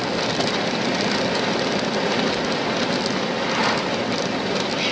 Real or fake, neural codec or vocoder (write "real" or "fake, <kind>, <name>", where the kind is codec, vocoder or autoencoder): real